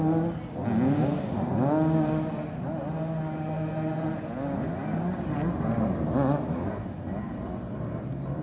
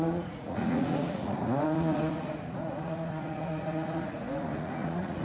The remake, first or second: second